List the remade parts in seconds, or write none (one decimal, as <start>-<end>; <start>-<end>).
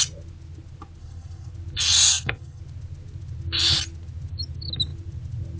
1.0-1.5; 2.1-2.6